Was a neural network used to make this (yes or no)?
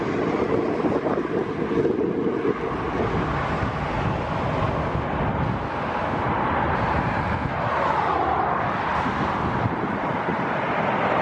no